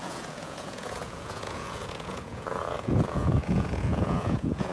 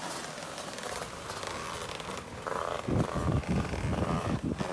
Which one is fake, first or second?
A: first